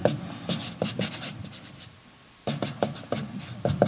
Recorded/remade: recorded